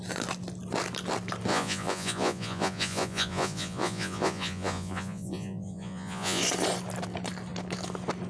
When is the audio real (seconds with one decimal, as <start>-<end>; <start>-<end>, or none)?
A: 0.0-1.5; 6.4-8.3